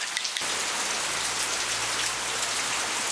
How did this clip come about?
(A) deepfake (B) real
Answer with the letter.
B